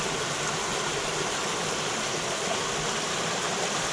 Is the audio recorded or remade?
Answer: recorded